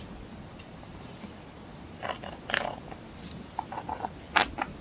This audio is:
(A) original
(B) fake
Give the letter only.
A